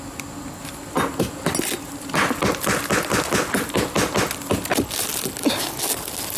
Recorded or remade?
recorded